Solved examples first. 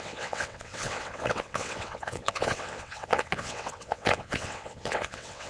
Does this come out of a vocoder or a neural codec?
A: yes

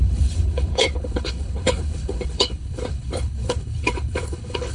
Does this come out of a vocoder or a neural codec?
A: yes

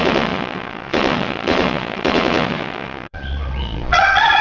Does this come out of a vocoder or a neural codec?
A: yes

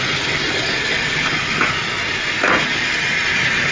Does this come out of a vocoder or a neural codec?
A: no